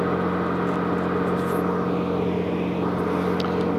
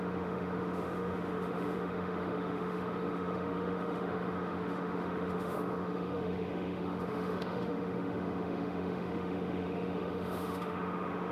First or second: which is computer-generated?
second